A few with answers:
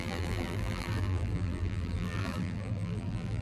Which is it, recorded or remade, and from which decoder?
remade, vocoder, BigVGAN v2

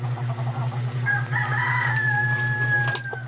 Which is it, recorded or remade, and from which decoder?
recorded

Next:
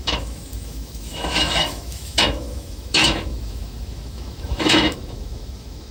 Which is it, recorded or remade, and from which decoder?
remade, autoencoder, DAC-VAE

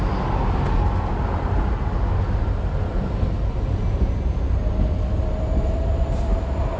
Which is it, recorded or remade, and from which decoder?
recorded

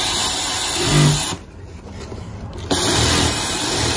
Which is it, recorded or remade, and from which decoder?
recorded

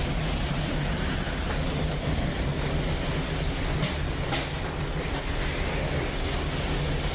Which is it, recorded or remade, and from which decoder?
recorded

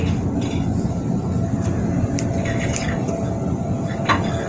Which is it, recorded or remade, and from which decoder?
recorded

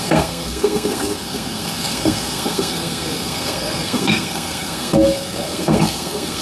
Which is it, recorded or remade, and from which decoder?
remade, codec, SNAC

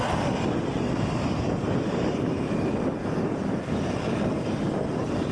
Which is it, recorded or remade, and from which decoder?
recorded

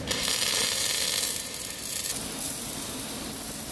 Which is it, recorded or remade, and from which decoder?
recorded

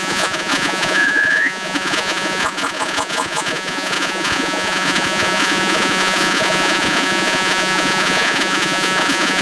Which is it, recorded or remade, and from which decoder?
remade, vocoder, Vocos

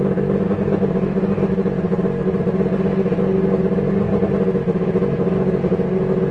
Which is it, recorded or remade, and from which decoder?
recorded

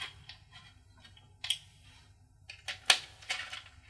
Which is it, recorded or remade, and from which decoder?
recorded